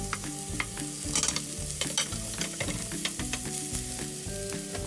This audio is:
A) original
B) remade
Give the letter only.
A